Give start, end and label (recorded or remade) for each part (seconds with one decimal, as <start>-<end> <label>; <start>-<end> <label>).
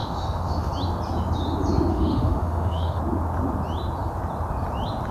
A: 0.0-0.7 remade; 0.7-1.9 recorded; 1.9-3.0 remade; 3.0-5.1 recorded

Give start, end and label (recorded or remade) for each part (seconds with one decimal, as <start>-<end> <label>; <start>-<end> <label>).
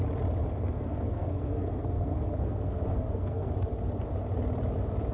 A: 0.0-0.4 recorded; 0.4-3.5 remade; 3.5-5.1 recorded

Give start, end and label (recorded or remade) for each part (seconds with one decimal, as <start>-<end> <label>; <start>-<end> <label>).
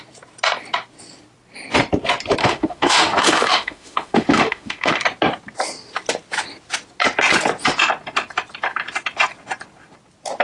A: 0.0-2.4 recorded; 2.4-5.0 remade; 5.0-10.4 recorded